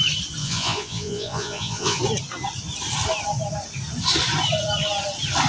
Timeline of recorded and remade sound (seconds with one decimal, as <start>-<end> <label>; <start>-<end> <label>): 0.0-0.4 recorded; 0.4-2.0 remade; 2.0-5.5 recorded

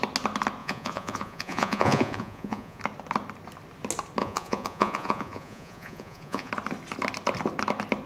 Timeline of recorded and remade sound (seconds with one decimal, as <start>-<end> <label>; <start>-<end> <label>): 0.0-0.6 recorded; 0.6-2.8 remade; 2.8-4.2 recorded; 4.2-6.5 remade; 6.5-8.1 recorded

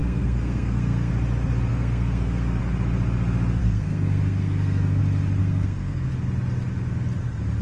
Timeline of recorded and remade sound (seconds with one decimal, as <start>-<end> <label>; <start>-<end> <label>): 0.0-1.1 remade; 1.1-1.7 recorded; 1.7-2.6 remade; 2.6-3.6 recorded; 3.6-5.0 remade; 5.0-5.4 recorded; 5.4-6.1 remade; 6.1-7.6 recorded